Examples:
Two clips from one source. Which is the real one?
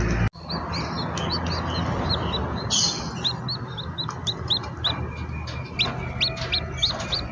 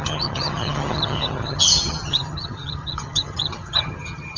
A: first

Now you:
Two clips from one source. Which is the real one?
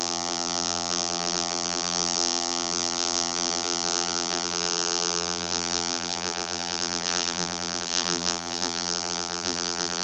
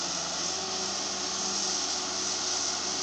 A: second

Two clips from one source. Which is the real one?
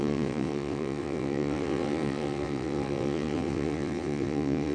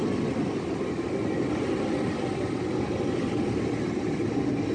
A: second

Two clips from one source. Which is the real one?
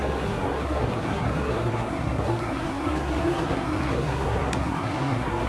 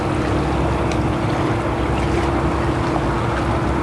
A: second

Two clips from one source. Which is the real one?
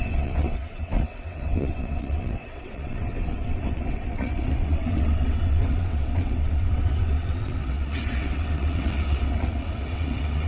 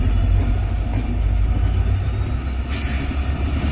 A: second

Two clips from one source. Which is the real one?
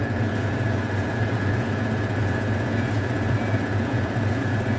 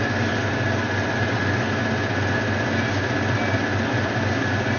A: second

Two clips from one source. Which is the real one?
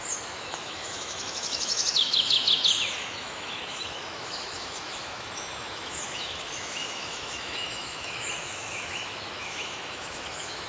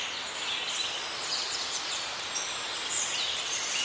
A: second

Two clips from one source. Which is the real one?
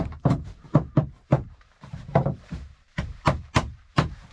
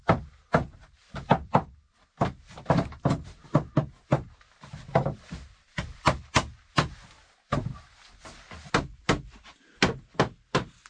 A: second